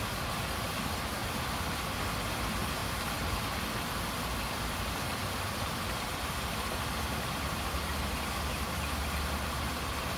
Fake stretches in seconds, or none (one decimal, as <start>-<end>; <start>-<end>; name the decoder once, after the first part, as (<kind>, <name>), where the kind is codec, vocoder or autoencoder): 1.2-1.8 (vocoder, BigVGAN v2); 5.2-8.0